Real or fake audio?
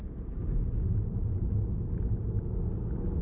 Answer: real